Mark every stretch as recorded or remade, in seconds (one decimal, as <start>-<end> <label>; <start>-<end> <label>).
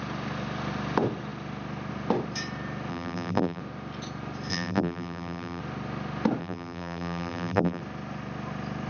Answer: 0.0-2.9 recorded; 2.9-3.6 remade; 3.6-4.5 recorded; 4.5-5.6 remade; 5.6-6.4 recorded; 6.4-7.8 remade; 7.8-8.9 recorded